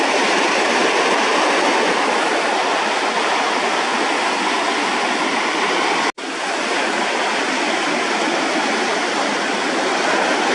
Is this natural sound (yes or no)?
yes